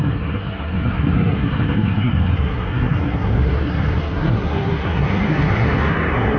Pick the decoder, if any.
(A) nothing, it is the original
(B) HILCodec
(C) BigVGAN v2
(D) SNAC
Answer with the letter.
D